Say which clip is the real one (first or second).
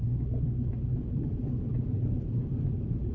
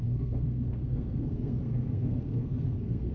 first